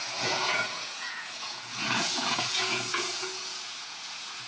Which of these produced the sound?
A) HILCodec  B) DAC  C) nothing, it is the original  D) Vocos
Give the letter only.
D